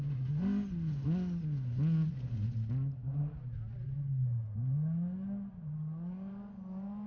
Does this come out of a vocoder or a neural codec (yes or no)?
no